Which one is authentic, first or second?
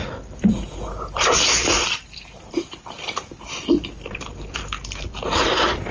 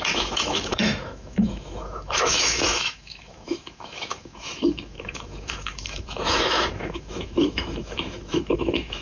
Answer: first